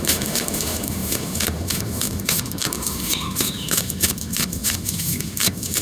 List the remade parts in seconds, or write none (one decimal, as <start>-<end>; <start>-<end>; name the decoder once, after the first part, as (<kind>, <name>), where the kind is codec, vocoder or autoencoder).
0.0-5.8 (autoencoder, DAC-VAE)